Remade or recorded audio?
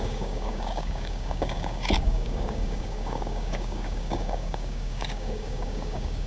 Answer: remade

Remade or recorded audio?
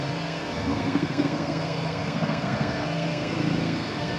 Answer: remade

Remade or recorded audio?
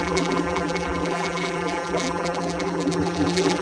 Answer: remade